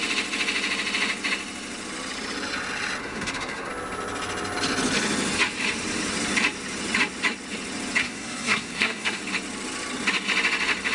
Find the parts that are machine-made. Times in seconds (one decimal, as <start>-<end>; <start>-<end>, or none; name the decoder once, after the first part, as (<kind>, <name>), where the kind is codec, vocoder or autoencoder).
3.0-3.7 (codec, SNAC); 8.0-9.2

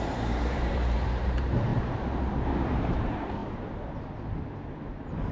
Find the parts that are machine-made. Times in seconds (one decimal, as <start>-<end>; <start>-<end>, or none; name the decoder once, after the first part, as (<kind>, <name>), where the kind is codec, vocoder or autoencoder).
0.0-5.3 (vocoder, BigVGAN v2)

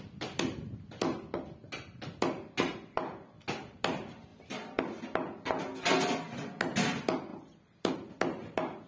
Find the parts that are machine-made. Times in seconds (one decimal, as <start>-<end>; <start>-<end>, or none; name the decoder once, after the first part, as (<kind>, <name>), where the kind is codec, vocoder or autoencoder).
4.3-4.8 (vocoder, BigVGAN v2); 7.3-8.1

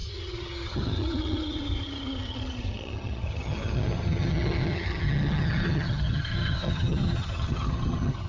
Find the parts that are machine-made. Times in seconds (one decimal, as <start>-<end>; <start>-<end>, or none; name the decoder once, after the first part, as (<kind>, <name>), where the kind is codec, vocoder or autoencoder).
0.0-8.3 (vocoder, HiFi-GAN)

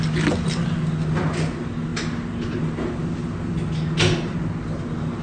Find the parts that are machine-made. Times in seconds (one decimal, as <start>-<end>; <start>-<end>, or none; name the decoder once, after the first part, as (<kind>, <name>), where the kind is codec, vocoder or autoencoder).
none

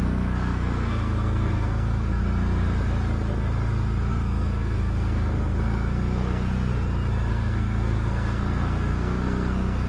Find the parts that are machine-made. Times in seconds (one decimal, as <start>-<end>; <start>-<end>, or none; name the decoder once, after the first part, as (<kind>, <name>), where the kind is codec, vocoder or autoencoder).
0.0-2.2 (codec, SNAC); 4.1-6.7; 7.3-9.9

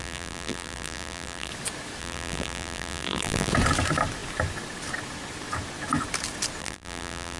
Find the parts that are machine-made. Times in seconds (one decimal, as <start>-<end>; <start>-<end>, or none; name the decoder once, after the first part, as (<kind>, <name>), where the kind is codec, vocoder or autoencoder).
0.0-1.5 (vocoder, BigVGAN v2); 2.0-3.5; 6.6-7.4

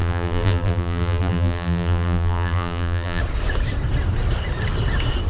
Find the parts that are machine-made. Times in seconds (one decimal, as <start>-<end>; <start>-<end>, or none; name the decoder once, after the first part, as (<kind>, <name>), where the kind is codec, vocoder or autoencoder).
0.0-3.2 (vocoder, BigVGAN v2)